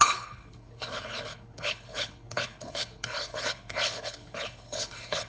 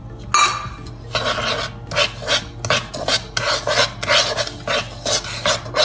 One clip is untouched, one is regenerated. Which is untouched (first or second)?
second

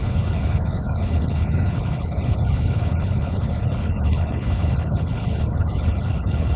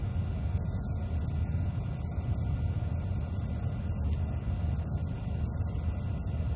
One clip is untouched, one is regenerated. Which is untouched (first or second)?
second